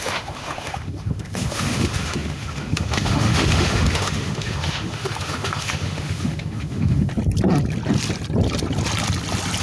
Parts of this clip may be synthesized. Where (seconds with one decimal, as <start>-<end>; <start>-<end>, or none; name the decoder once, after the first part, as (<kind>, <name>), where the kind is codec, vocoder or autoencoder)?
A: 0.0-7.1 (autoencoder, DAC-VAE)